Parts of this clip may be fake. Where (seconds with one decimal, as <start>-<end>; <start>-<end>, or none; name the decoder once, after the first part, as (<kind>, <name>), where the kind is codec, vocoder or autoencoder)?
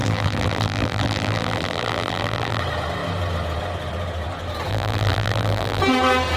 0.0-2.6 (vocoder, BigVGAN v2); 4.7-5.8